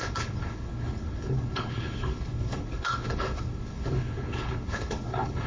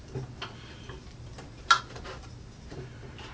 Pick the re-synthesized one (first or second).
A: first